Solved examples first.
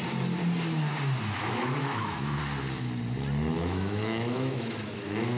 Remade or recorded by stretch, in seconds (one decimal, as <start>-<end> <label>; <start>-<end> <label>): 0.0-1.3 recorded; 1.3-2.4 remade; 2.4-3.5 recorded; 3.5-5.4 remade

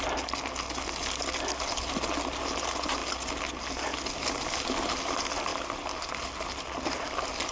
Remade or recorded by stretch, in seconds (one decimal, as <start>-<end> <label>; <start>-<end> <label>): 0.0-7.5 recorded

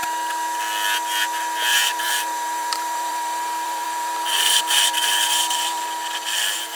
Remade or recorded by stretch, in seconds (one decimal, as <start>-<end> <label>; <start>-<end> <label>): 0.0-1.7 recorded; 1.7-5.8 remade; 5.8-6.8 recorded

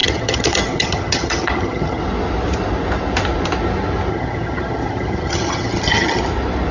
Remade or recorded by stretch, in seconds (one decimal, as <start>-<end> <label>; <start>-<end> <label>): 0.0-2.0 remade; 2.0-4.1 recorded; 4.1-6.2 remade; 6.2-6.7 recorded

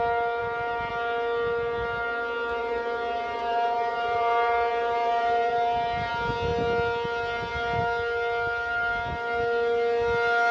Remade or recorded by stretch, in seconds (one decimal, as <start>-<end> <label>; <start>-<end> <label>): 0.0-0.4 recorded; 0.4-0.9 remade; 0.9-2.6 recorded; 2.6-6.1 remade; 6.1-10.5 recorded

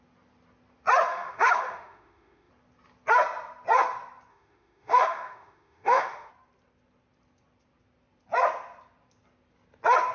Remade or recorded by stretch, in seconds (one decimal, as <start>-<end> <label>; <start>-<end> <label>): 0.0-1.1 recorded; 1.1-2.5 remade; 2.5-4.3 recorded; 4.3-6.3 remade; 6.3-10.1 recorded